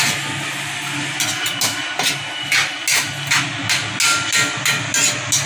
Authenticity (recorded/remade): recorded